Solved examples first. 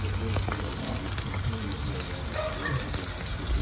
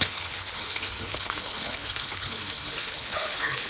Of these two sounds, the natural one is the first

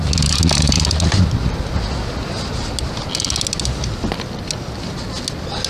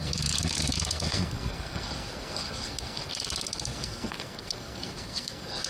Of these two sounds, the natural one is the first